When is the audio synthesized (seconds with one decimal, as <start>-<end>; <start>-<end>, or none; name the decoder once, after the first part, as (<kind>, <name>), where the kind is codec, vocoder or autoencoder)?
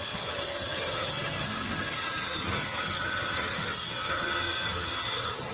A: 0.0-5.5 (vocoder, HiFi-GAN)